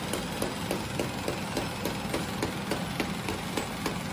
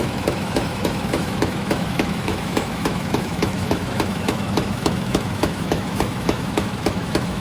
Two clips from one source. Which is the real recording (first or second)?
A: first